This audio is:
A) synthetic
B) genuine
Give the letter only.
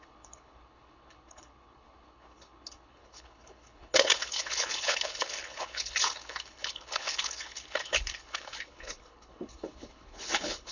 A